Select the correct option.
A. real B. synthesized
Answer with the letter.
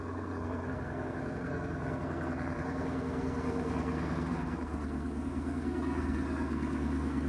B